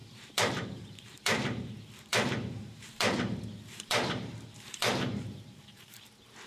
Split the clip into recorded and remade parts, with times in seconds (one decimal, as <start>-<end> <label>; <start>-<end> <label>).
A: 0.0-1.7 remade; 1.7-2.1 recorded; 2.1-6.0 remade; 6.0-6.5 recorded